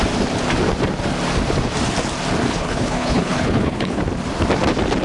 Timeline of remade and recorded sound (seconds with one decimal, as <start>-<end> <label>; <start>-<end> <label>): 0.0-2.5 recorded; 2.5-4.0 remade; 4.0-5.0 recorded